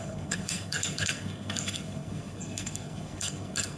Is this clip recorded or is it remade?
remade